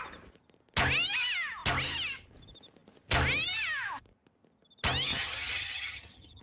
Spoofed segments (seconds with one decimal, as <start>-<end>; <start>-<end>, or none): 5.1-6.4